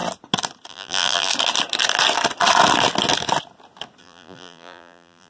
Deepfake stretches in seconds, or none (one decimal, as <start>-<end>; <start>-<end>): 0.7-1.3; 4.0-5.3